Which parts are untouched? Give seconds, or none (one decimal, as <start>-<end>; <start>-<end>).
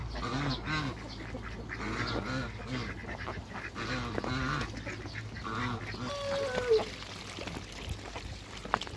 0.0-9.0